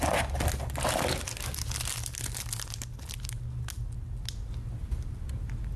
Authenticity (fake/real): real